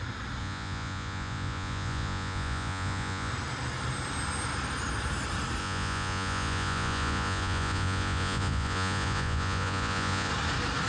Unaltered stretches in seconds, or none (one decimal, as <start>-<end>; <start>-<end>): 0.0-0.4; 3.3-5.6; 10.3-10.9